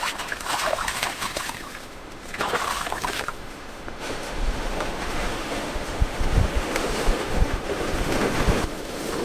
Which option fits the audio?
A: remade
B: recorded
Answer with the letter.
A